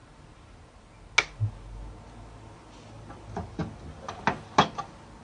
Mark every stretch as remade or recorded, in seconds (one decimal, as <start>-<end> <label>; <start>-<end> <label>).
0.0-5.2 recorded